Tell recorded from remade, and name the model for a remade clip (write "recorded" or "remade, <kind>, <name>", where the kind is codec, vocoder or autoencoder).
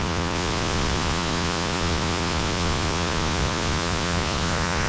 remade, vocoder, Vocos